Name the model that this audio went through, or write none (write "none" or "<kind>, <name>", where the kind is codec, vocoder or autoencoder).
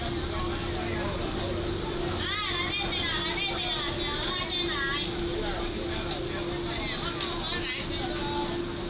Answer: none